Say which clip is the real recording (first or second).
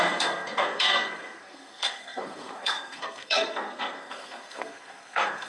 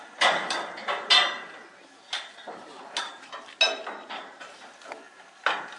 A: second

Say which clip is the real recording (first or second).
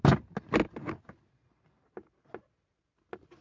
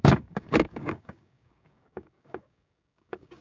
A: first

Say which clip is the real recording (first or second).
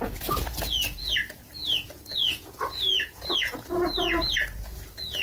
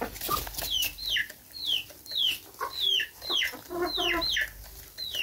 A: second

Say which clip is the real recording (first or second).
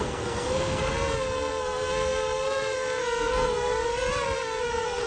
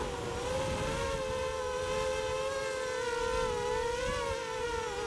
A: second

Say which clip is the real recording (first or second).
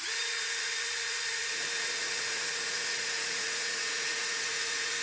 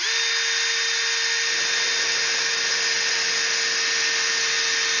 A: second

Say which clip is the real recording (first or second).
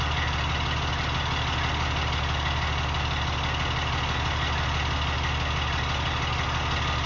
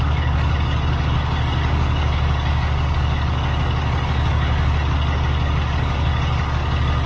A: first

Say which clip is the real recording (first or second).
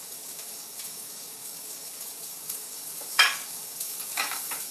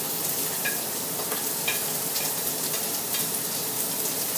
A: second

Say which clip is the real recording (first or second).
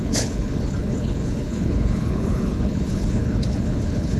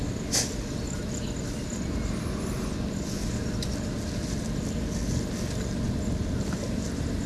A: second